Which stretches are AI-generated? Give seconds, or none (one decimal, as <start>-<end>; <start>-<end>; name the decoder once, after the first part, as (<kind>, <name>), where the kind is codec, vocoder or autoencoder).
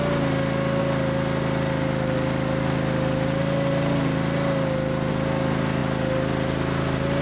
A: none